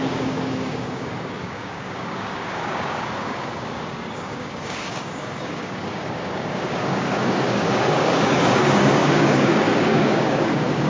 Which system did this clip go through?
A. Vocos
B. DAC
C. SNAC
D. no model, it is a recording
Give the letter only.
B